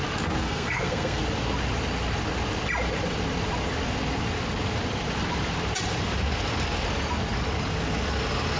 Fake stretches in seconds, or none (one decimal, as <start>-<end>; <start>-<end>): 0.4-1.2